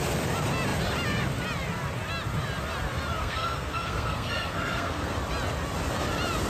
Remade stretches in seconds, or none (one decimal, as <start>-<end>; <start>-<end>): 3.2-5.1